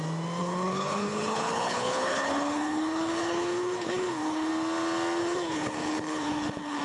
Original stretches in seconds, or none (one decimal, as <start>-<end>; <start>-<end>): 0.0-0.4; 4.5-5.2